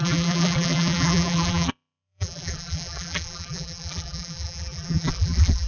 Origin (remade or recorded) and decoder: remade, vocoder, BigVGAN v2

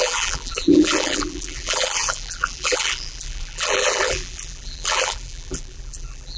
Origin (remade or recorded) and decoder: remade, vocoder, BigVGAN v2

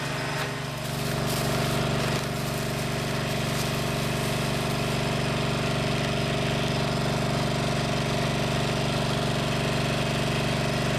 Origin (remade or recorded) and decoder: recorded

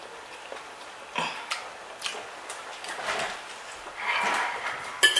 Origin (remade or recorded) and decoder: recorded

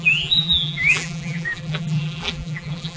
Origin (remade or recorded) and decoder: remade, vocoder, BigVGAN v2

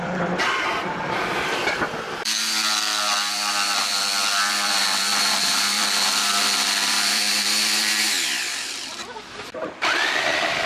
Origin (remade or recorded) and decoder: remade, vocoder, BigVGAN v2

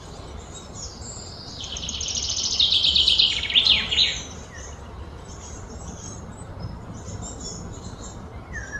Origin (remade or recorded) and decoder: remade, vocoder, BigVGAN v2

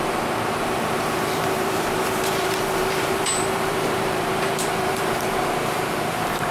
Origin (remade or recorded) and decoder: remade, vocoder, BigVGAN v2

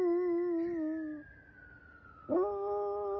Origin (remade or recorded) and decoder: recorded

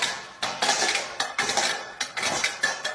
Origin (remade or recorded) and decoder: recorded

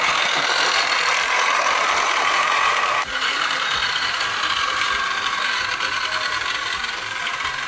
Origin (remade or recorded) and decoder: remade, vocoder, BigVGAN v2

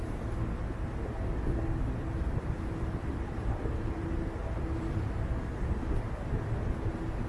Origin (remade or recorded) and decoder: recorded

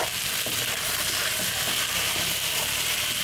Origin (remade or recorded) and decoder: recorded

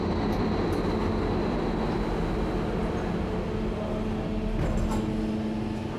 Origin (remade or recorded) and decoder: recorded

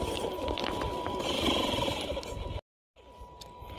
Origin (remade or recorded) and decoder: remade, vocoder, BigVGAN v2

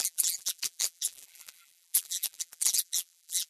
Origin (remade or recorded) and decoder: remade, vocoder, BigVGAN v2